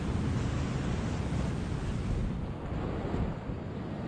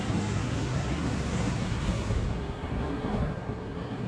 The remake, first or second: second